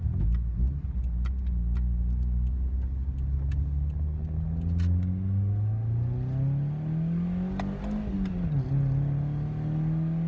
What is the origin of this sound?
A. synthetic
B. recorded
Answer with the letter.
B